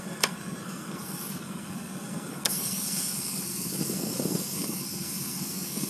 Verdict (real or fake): fake